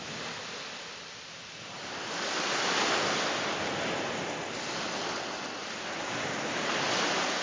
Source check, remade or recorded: recorded